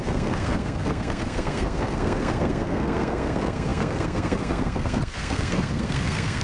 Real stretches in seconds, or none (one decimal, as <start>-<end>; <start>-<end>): none